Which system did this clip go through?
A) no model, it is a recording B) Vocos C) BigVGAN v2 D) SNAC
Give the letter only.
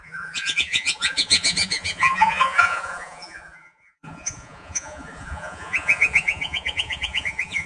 B